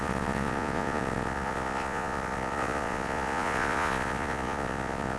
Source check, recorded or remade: remade